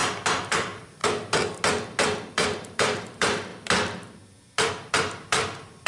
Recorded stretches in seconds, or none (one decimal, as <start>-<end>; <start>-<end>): 0.0-0.5; 1.0-2.3; 3.5-4.9